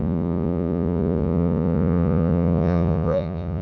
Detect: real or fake fake